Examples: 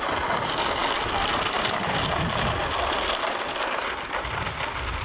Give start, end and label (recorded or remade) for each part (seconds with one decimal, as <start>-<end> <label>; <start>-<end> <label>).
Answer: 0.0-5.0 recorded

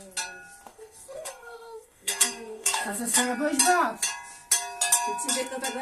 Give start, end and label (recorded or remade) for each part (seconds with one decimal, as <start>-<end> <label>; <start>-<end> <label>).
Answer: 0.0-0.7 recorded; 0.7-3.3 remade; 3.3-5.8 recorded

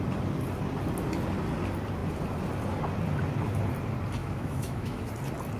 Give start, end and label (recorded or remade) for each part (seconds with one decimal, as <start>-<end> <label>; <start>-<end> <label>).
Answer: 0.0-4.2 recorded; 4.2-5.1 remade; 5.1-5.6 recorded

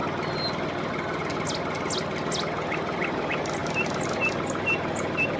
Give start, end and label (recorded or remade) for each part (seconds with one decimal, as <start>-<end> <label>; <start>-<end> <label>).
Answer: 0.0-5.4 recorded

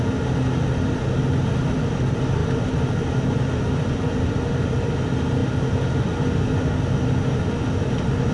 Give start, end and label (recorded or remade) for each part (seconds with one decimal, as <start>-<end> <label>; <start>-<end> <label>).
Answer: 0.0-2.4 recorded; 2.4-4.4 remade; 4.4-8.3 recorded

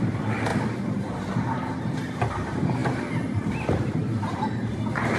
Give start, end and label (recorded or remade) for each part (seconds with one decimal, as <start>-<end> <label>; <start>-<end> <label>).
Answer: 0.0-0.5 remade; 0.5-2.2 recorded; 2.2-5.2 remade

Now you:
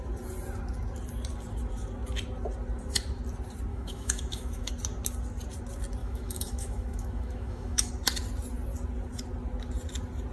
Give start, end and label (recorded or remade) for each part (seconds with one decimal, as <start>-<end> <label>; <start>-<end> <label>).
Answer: 0.0-3.7 recorded; 3.7-4.7 remade; 4.7-6.0 recorded; 6.0-7.9 remade; 7.9-10.3 recorded

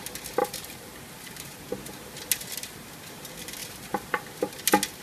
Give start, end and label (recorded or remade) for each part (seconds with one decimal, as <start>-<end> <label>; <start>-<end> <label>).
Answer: 0.0-0.4 recorded; 0.4-1.6 remade; 1.6-3.6 recorded; 3.6-4.2 remade; 4.2-5.0 recorded